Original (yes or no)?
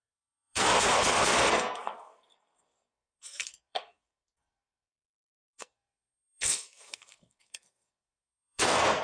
no